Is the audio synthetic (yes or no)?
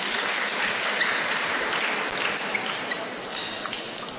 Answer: no